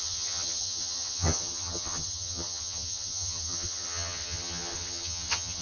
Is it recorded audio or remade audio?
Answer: remade